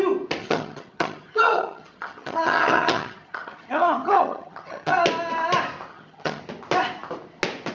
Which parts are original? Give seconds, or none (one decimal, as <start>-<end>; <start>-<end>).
0.0-0.4; 5.0-5.9; 6.4-7.7